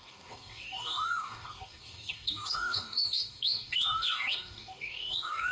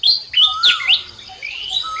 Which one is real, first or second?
second